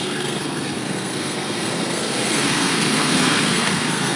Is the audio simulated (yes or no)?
yes